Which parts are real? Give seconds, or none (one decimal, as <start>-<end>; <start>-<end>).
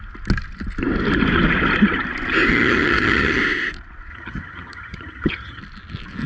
0.0-2.5; 3.4-4.1; 5.6-6.3